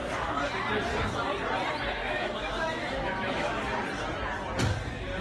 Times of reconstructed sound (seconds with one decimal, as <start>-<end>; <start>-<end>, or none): 0.0-0.5; 2.0-3.6